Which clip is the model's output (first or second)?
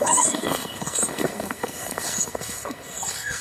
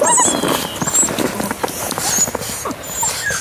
first